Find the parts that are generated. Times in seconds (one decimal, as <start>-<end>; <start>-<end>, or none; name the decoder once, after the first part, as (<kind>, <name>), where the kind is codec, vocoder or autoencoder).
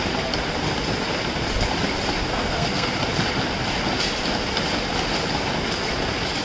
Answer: 2.3-2.9 (codec, SNAC)